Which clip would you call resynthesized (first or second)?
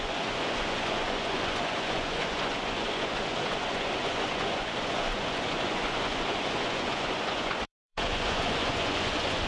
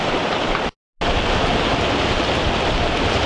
first